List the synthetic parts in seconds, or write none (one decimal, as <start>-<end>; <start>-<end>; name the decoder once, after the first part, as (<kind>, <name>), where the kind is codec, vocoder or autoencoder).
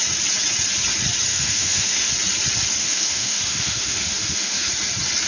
1.3-2.1 (autoencoder, DAC-VAE); 2.8-4.7